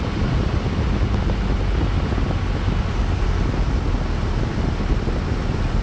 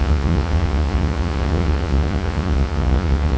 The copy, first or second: second